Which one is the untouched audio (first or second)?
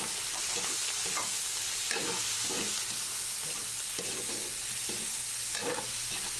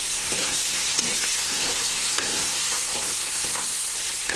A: first